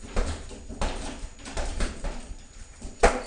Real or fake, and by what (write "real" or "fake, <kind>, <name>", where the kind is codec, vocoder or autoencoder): fake, vocoder, BigVGAN v2